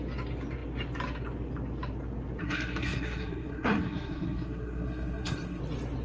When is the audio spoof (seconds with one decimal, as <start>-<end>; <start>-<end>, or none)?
2.4-5.6